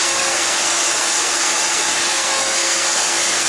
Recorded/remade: remade